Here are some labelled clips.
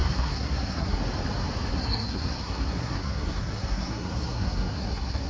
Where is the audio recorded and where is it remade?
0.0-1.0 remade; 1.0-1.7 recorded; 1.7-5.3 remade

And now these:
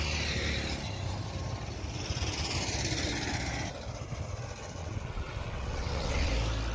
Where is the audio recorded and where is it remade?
0.0-4.8 recorded; 4.8-6.3 remade; 6.3-6.7 recorded

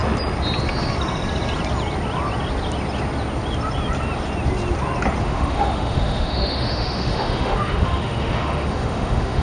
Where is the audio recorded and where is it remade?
0.0-5.2 recorded; 5.2-9.4 remade

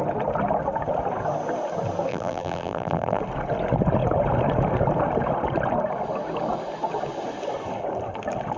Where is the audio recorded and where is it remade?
0.0-2.1 recorded; 2.1-3.2 remade; 3.2-8.6 recorded

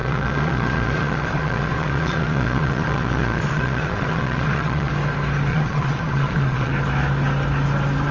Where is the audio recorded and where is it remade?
0.0-4.9 remade; 4.9-5.5 recorded; 5.5-6.7 remade; 6.7-8.1 recorded

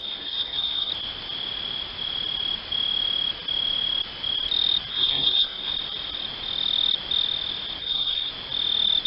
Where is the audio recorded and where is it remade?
0.0-0.9 remade; 0.9-4.9 recorded; 4.9-5.7 remade; 5.7-7.8 recorded; 7.8-8.3 remade; 8.3-9.1 recorded

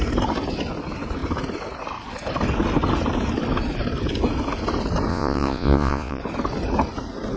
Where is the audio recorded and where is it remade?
0.0-5.1 recorded; 5.1-6.2 remade; 6.2-7.4 recorded